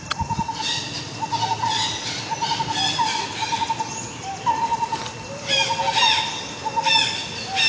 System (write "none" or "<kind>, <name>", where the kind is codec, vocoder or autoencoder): none